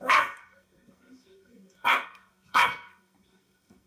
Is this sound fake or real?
fake